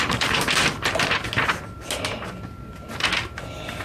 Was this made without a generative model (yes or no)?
yes